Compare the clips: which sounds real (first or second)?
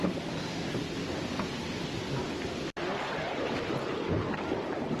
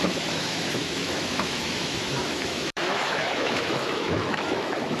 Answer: first